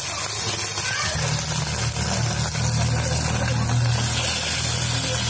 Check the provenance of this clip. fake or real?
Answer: real